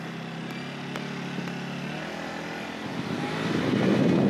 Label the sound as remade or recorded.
recorded